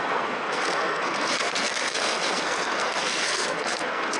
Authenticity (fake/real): fake